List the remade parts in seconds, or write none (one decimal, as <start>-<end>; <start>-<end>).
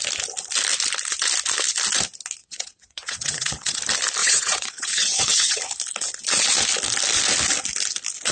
2.4-3.8; 4.2-5.6